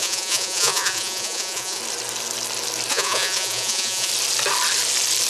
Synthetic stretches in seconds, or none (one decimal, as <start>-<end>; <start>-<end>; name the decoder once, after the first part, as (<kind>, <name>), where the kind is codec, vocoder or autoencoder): 0.0-1.8 (vocoder, Vocos); 2.9-4.1